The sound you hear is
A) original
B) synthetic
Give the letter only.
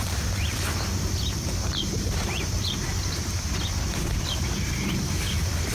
B